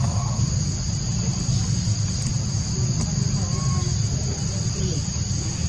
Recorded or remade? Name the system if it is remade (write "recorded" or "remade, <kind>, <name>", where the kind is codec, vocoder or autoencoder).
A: recorded